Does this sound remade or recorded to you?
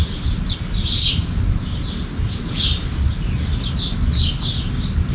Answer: recorded